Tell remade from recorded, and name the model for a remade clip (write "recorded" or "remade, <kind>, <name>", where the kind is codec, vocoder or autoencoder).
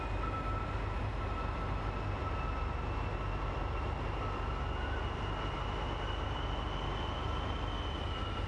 recorded